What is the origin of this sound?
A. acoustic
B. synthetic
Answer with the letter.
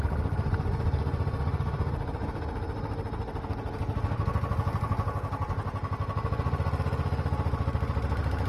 A